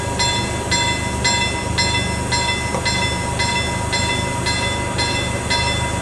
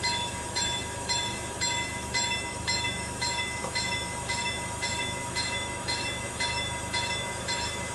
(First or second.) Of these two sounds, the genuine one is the first